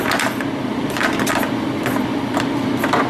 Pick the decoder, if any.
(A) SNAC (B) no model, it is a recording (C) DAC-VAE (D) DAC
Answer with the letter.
B